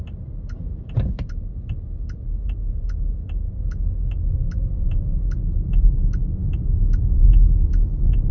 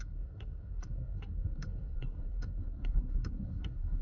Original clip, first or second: first